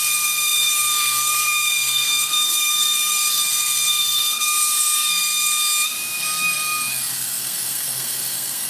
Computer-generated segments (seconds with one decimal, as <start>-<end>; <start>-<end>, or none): 0.0-5.6; 6.2-8.7